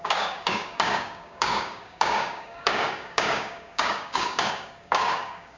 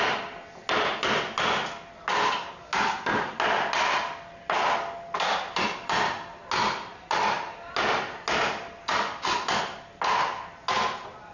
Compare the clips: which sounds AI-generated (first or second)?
first